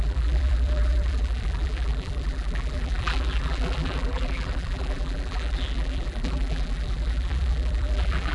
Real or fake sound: fake